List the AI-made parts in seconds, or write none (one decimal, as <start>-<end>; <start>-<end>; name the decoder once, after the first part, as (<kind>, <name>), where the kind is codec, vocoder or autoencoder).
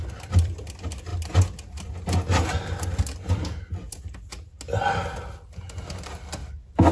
0.0-0.6 (vocoder, BigVGAN v2); 6.4-6.9